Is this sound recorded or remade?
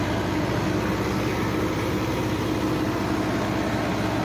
recorded